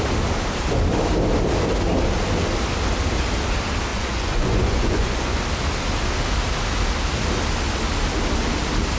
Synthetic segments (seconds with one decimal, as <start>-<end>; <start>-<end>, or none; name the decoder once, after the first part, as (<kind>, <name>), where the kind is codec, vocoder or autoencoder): 3.9-5.4 (vocoder, Vocos)